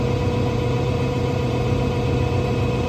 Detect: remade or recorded remade